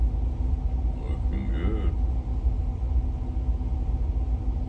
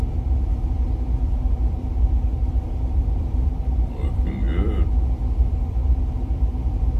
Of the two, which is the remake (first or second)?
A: second